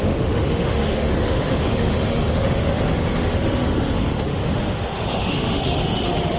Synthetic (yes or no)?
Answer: yes